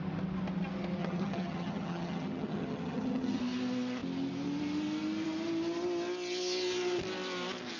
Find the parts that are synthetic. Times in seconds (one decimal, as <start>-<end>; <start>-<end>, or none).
1.0-3.4

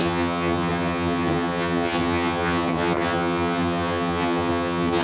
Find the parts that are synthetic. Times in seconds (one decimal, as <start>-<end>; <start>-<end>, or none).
0.0-5.0

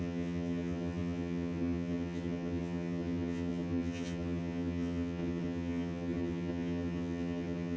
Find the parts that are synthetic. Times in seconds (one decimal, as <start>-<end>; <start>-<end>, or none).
0.0-7.8

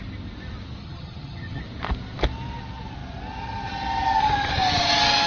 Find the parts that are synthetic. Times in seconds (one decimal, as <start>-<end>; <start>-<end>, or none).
0.8-1.6